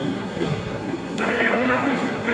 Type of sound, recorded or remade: remade